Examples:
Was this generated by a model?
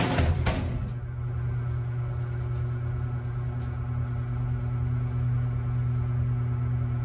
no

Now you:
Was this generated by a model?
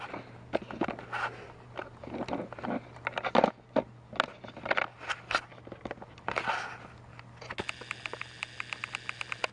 no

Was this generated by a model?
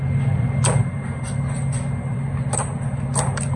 no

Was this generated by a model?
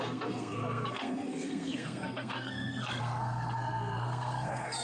yes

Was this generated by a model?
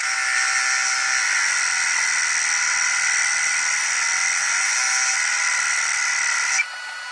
no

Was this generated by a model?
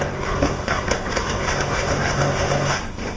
yes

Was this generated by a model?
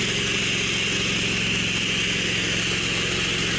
no